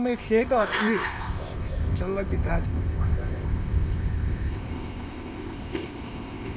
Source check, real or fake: fake